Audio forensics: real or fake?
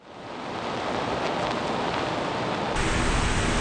real